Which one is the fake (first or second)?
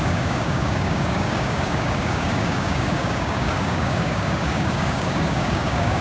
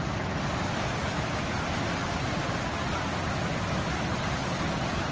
first